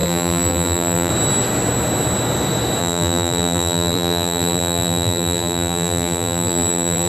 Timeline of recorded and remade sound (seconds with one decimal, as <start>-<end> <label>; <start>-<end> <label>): 0.0-1.1 remade; 1.1-2.8 recorded; 2.8-7.1 remade